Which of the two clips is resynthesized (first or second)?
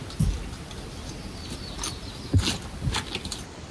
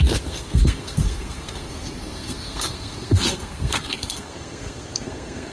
second